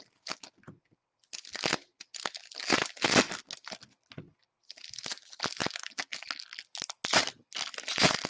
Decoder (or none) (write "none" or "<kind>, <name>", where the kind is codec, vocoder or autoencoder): none